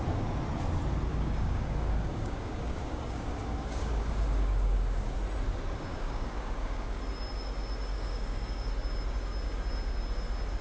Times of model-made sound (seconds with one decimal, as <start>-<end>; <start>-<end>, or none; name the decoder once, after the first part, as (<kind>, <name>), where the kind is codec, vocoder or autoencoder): 1.1-5.2 (codec, DAC); 5.9-7.0; 7.9-8.7